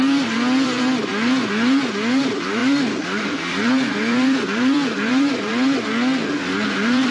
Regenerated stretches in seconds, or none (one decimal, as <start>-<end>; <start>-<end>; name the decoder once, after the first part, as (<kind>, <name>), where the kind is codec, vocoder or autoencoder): 0.0-1.1 (vocoder, BigVGAN v2); 2.2-5.5; 6.3-7.1